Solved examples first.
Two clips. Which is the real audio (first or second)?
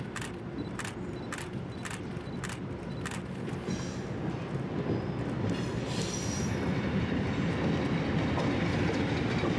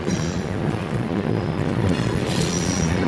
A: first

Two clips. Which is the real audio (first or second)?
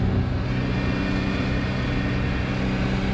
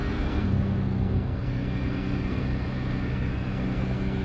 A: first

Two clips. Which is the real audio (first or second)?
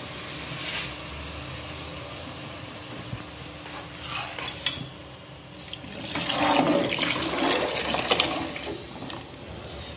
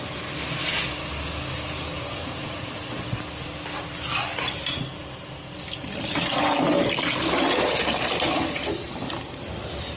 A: first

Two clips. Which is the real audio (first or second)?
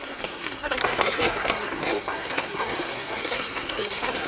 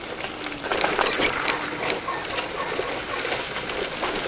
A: second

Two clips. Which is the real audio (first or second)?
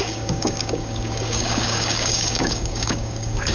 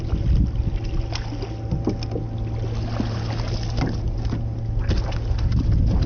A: second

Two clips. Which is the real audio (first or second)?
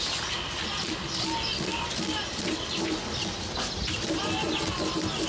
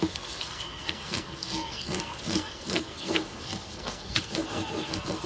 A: first